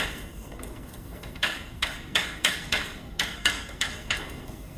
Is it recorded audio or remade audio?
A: remade